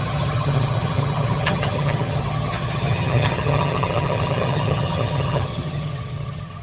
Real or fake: fake